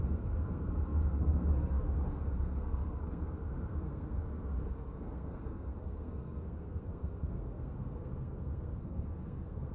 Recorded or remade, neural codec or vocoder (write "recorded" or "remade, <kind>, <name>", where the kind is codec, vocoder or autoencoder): remade, codec, SNAC